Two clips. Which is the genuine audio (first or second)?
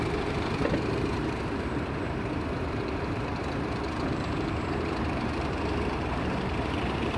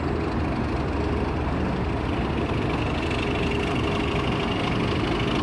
second